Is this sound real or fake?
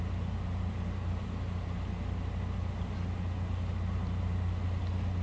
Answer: real